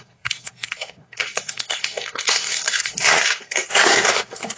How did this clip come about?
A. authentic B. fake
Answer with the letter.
B